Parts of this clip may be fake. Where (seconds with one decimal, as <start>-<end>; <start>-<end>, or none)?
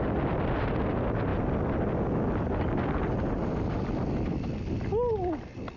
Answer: none